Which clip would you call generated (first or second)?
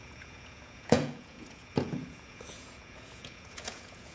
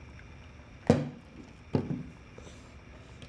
first